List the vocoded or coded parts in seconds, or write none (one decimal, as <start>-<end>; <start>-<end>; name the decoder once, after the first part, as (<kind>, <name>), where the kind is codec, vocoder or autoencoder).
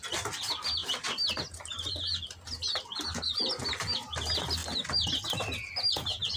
none